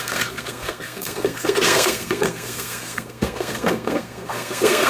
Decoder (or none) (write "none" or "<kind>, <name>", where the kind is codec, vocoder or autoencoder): codec, SNAC